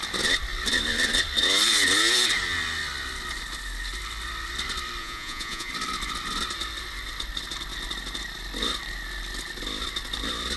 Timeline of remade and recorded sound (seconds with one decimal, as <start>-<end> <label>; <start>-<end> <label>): 0.0-5.0 recorded; 5.0-5.7 remade; 5.7-10.6 recorded